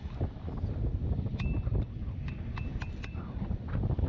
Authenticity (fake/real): real